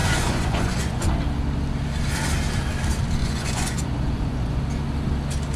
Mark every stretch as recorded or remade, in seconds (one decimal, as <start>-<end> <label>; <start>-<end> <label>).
0.0-1.1 remade; 1.1-3.2 recorded; 3.2-4.6 remade; 4.6-5.6 recorded